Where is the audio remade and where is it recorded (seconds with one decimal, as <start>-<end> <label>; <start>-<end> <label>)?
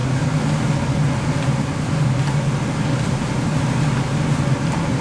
0.0-5.0 recorded